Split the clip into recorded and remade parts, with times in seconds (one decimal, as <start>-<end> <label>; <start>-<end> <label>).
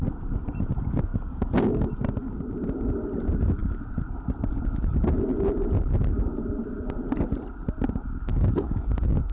0.0-1.1 recorded; 1.1-1.9 remade; 1.9-8.3 recorded; 8.3-8.9 remade; 8.9-9.3 recorded